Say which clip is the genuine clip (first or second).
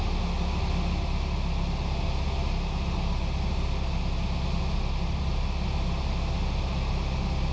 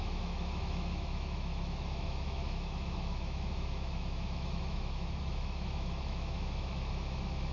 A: first